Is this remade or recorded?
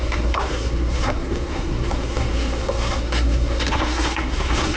remade